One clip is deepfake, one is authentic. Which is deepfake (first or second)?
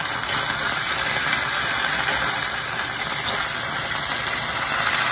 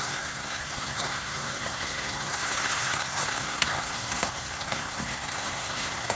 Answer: second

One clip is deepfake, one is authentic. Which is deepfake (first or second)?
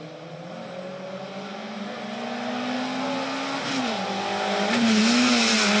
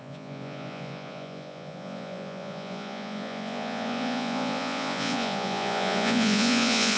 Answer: second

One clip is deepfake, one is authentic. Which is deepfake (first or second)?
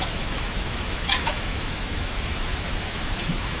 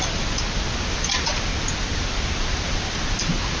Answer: first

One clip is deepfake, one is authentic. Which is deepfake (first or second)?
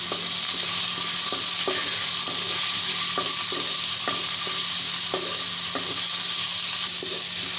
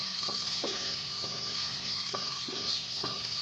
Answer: second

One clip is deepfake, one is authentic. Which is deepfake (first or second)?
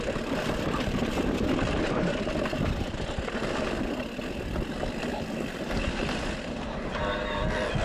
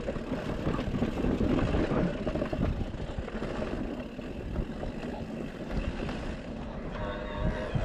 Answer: first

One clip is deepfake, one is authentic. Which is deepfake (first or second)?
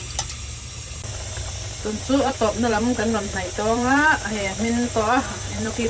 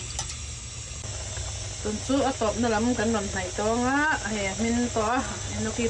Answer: first